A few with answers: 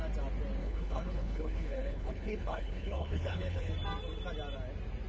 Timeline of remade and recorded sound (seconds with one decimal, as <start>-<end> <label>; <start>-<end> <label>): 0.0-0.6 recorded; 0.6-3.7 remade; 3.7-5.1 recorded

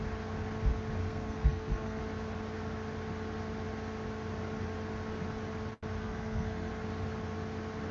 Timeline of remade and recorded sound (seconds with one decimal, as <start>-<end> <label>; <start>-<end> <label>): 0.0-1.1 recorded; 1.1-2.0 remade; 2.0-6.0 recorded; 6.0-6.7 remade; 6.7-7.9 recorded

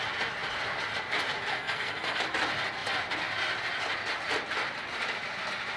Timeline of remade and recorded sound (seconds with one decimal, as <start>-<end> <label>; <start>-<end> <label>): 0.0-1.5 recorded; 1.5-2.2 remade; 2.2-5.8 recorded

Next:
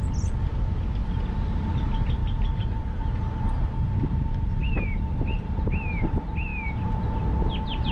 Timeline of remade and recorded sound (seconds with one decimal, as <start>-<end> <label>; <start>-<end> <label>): 0.0-2.2 recorded; 2.2-3.4 remade; 3.4-7.9 recorded